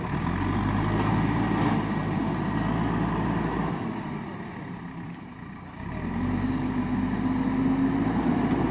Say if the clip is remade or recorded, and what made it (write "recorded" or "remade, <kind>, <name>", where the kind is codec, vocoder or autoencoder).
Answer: recorded